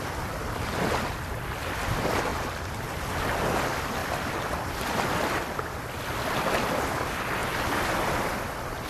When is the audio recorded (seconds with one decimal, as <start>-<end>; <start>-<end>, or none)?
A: 0.0-4.0; 5.8-7.4; 8.5-8.9